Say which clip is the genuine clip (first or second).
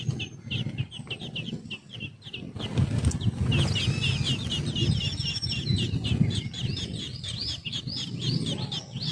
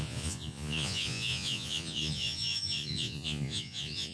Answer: first